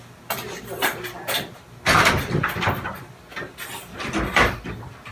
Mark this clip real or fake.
real